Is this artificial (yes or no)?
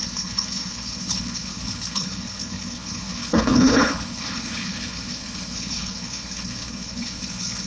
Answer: yes